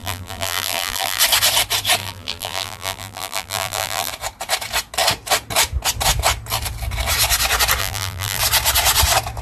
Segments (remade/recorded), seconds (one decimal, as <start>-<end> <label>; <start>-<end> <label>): 0.0-1.2 remade; 1.2-2.0 recorded; 2.0-4.1 remade; 4.1-7.8 recorded; 7.8-8.4 remade; 8.4-9.4 recorded